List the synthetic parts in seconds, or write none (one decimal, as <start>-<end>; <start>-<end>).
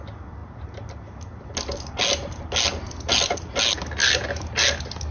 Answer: none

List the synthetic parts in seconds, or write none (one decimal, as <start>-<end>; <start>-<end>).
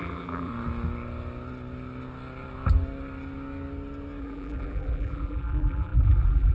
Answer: 0.0-0.5; 4.2-6.5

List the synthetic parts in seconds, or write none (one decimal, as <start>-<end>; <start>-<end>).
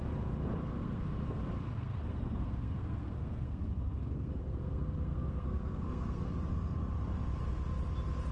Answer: 0.8-1.4; 1.8-6.3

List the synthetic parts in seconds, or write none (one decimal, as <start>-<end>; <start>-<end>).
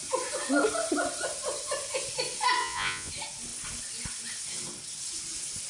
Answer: 2.6-3.1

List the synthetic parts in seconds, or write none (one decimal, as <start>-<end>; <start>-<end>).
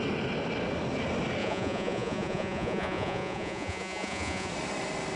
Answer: 1.4-4.5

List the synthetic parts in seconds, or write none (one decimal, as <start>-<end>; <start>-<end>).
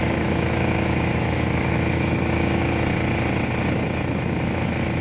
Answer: 0.0-2.9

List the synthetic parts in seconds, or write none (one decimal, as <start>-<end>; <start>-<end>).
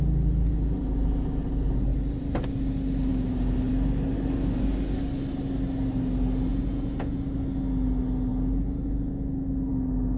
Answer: 6.5-7.2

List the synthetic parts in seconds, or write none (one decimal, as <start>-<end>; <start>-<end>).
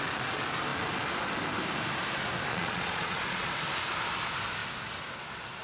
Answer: 2.5-3.5